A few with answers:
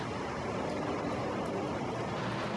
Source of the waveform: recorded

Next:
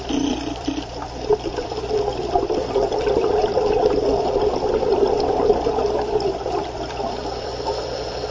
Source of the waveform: remade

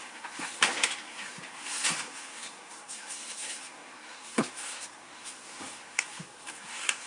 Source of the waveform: remade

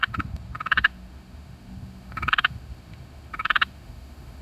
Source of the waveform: remade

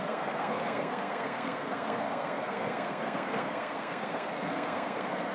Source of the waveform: remade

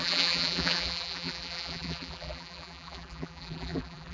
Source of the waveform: remade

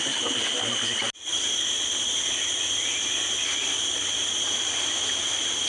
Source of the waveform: recorded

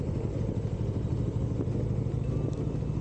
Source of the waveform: recorded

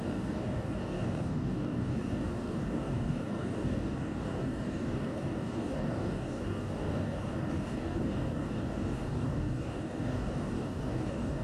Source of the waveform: remade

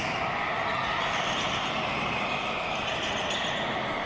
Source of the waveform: remade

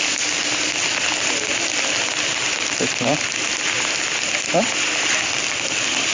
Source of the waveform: recorded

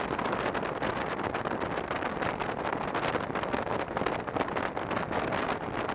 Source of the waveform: recorded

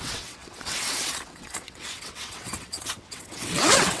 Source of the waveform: remade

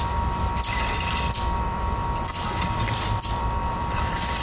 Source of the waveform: remade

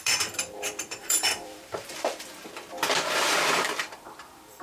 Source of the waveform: remade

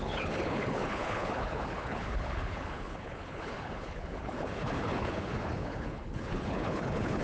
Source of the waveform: remade